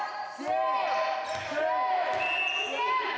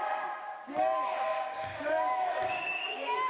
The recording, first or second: first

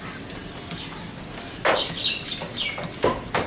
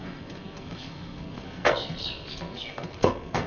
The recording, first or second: first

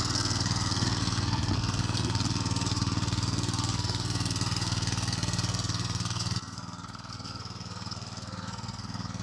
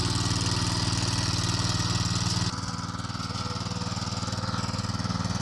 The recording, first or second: second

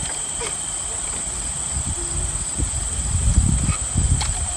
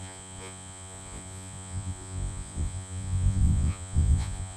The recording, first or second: first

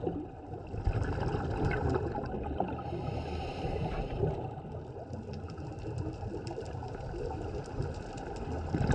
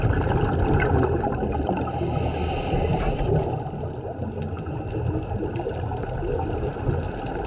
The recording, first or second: second